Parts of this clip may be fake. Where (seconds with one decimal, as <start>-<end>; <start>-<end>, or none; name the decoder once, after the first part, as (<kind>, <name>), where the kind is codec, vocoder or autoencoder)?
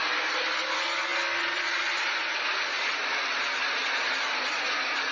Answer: none